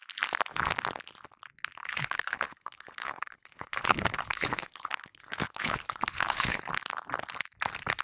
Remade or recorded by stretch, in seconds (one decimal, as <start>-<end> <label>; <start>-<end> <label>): 0.0-1.8 recorded; 1.8-6.6 remade; 6.6-8.0 recorded